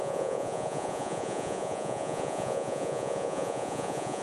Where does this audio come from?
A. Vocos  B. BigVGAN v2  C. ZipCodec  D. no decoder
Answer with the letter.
A